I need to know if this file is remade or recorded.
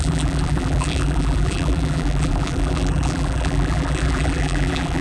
remade